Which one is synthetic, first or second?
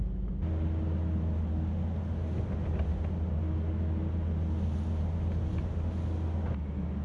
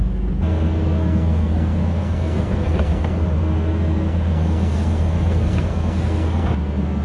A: second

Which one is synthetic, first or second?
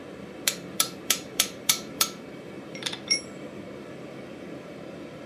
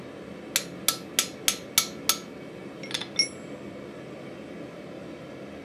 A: first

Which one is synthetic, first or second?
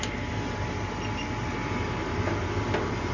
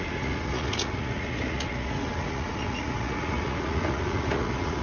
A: second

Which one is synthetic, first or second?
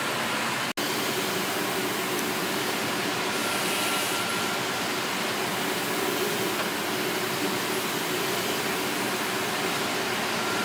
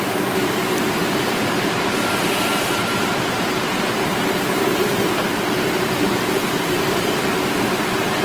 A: second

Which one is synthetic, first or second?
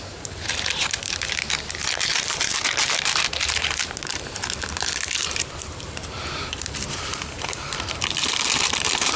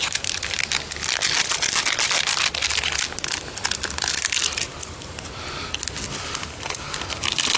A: first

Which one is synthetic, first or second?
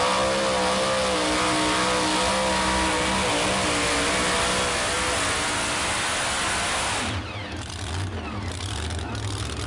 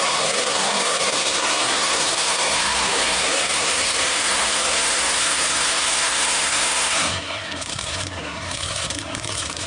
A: second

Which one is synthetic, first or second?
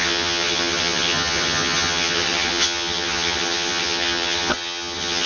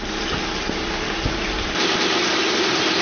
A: first